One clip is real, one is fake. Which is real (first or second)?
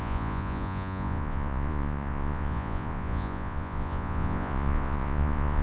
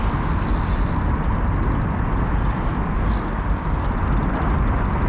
second